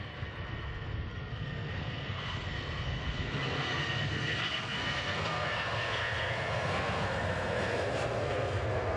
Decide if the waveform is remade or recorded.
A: remade